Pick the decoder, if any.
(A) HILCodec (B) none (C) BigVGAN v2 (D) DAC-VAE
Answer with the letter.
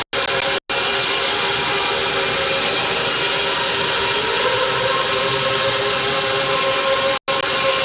B